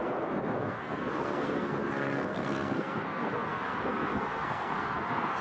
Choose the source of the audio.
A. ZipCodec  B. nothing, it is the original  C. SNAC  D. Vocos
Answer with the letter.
C